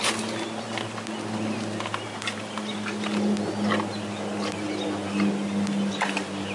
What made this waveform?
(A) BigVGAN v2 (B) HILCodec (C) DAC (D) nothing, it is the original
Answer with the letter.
D